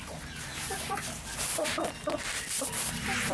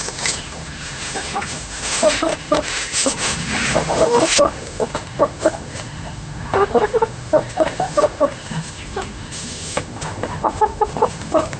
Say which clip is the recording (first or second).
first